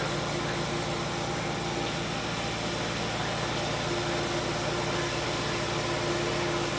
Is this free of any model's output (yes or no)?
yes